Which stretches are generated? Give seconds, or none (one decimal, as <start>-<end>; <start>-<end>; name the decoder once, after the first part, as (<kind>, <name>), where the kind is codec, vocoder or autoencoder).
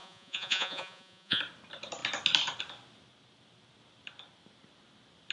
0.0-1.4 (vocoder, Vocos)